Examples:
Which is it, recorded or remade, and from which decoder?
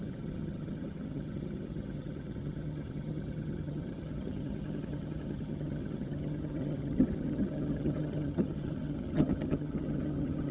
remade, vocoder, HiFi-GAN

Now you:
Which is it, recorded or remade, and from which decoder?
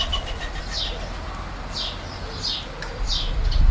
recorded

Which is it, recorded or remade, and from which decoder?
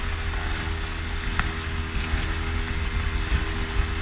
recorded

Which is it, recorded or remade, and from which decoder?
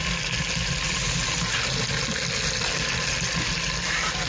recorded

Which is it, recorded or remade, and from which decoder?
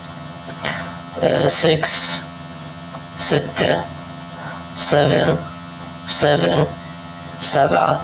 remade, vocoder, HiFi-GAN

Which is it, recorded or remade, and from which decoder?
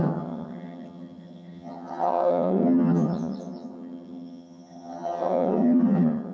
remade, vocoder, HiFi-GAN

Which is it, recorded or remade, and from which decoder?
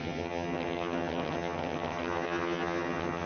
remade, vocoder, HiFi-GAN